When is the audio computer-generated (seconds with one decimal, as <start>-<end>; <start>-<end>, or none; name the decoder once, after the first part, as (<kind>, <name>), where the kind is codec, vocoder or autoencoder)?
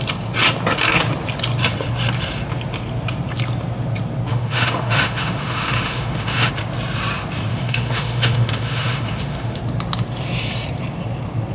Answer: 4.3-6.5 (autoencoder, DAC-VAE); 7.5-9.6